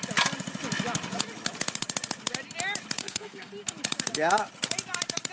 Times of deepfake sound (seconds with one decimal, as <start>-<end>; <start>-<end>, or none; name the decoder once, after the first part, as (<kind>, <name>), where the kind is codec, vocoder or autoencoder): 3.0-3.5 (codec, SNAC)